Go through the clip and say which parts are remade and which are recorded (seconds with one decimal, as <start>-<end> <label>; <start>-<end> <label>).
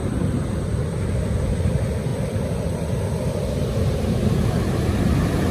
0.0-0.6 remade; 0.6-2.1 recorded; 2.1-5.0 remade; 5.0-5.5 recorded